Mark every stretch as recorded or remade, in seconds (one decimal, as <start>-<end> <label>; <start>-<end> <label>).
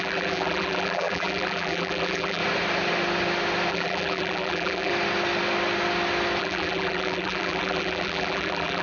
0.0-2.4 remade; 2.4-3.7 recorded; 3.7-4.9 remade; 4.9-6.4 recorded; 6.4-8.8 remade